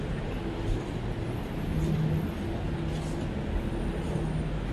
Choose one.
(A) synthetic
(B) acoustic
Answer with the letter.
B